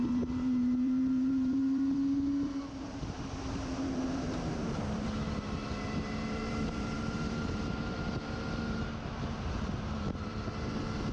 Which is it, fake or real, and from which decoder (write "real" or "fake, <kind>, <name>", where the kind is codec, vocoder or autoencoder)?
fake, vocoder, BigVGAN v2